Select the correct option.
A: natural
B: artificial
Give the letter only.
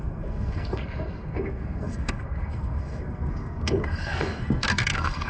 B